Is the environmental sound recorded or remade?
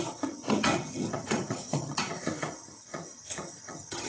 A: remade